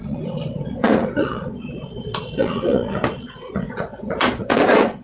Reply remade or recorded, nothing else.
remade